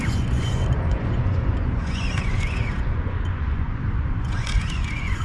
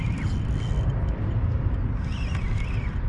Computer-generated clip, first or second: first